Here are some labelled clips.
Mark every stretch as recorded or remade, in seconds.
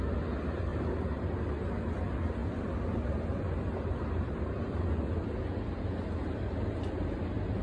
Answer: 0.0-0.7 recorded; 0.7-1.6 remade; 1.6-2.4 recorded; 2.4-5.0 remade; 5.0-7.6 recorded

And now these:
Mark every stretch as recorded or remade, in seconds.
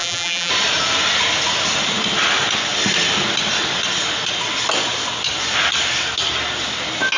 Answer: 0.0-0.5 remade; 0.5-7.2 recorded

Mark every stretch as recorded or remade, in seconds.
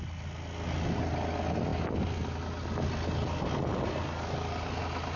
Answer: 0.0-5.2 recorded